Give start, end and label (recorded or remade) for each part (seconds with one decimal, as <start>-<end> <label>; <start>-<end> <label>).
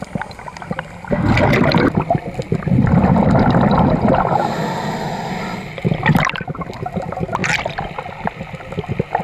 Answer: 0.0-9.2 recorded